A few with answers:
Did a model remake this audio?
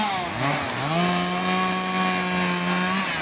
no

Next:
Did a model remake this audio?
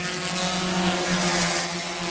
no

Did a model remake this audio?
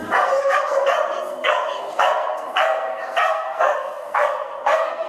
yes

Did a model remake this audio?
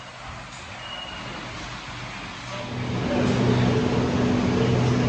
no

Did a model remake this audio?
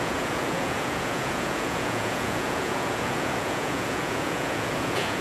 yes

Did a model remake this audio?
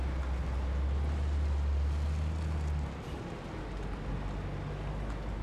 no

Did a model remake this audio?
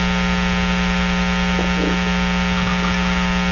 no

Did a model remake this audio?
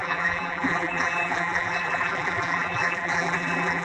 yes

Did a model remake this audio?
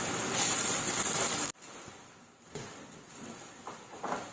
no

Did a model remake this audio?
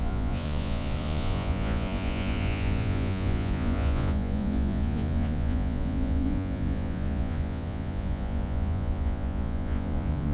yes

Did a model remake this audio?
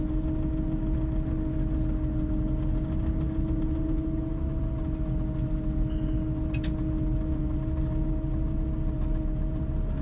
no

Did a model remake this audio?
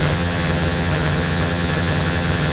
yes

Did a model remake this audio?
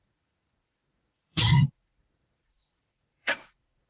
yes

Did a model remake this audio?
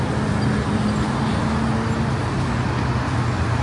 no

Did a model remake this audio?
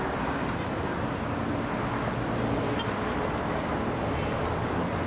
no